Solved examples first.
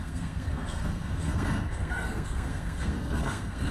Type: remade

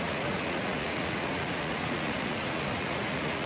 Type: remade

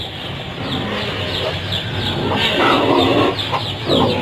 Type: recorded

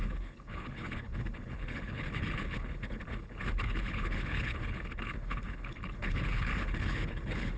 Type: remade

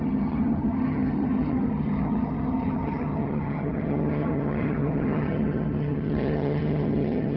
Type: remade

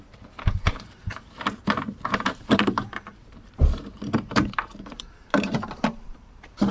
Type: remade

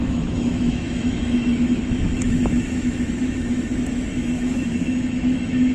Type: remade